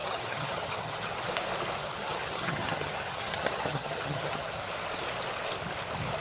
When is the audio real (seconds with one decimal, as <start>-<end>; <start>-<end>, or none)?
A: 1.1-1.8; 4.5-6.2